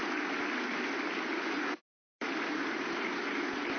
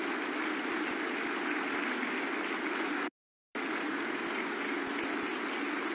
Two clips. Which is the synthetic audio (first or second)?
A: first